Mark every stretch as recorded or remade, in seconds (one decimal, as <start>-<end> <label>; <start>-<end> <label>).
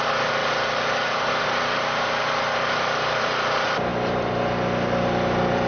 0.0-0.4 remade; 0.4-1.3 recorded; 1.3-5.7 remade